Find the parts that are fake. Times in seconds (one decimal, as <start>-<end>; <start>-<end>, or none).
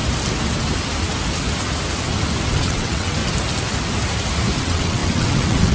2.6-3.2; 4.6-5.7